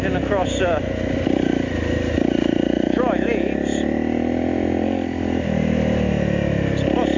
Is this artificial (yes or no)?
no